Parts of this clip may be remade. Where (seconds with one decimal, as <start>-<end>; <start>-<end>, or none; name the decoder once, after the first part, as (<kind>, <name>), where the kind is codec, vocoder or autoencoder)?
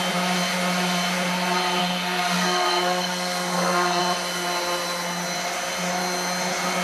1.8-4.0 (codec, SNAC)